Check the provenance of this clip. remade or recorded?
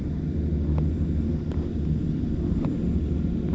recorded